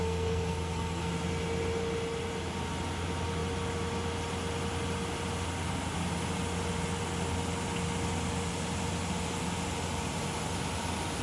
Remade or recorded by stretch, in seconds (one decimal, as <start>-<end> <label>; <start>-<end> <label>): 0.0-1.1 remade; 1.1-11.2 recorded